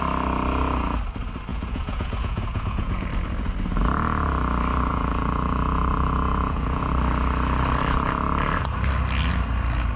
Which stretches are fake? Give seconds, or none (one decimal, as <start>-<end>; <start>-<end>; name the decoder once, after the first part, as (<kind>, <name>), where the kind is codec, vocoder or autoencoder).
1.5-3.1 (vocoder, Vocos); 4.9-6.9